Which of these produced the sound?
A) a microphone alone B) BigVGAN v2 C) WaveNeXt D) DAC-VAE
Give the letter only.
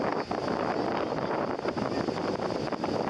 A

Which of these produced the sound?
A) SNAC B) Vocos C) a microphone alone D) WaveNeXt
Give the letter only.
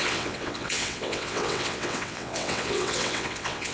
D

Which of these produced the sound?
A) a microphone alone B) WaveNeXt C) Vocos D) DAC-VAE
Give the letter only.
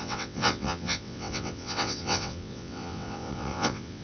B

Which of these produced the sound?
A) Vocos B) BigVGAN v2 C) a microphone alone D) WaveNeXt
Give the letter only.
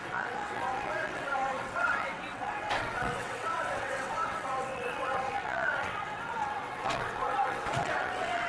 D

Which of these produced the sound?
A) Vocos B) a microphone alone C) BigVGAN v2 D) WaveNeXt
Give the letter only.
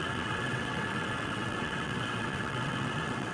D